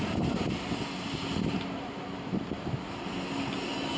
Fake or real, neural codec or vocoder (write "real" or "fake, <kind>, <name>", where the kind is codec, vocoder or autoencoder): real